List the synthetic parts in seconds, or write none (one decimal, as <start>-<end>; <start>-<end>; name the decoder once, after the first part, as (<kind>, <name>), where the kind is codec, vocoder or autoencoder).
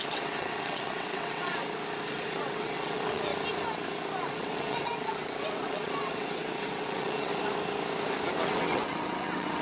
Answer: 0.0-1.6 (vocoder, WaveNeXt); 2.1-3.3; 4.2-7.3; 8.3-9.6